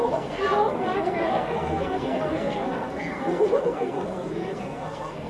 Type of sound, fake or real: fake